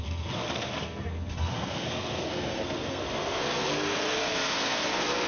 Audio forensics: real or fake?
fake